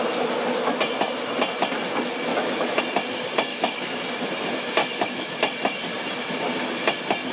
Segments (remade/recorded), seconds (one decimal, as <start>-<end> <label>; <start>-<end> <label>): 0.0-2.3 recorded; 2.3-2.8 remade; 2.8-3.5 recorded; 3.5-4.0 remade; 4.0-4.8 recorded; 4.8-5.4 remade; 5.4-7.3 recorded